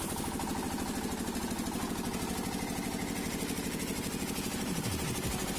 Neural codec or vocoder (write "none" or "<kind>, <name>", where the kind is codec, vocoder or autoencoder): none